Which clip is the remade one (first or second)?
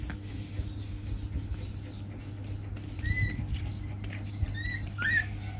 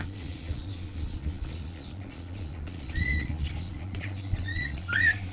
second